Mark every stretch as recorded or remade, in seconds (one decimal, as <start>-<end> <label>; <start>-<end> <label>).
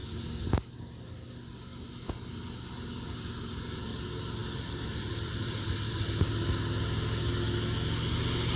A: 0.0-4.4 recorded; 4.4-6.0 remade; 6.0-8.6 recorded